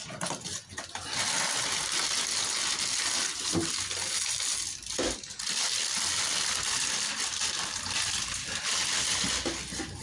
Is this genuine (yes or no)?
yes